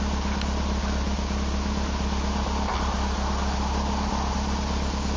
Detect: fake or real real